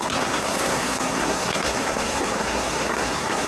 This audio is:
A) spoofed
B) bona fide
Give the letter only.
A